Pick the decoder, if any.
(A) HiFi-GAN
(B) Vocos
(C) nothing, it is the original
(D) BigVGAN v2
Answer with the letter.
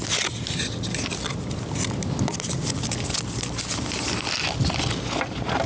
C